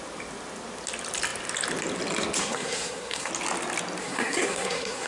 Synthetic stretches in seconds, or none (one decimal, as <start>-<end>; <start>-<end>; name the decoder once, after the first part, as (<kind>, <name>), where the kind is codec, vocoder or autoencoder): 2.4-3.3 (codec, SNAC); 4.0-5.1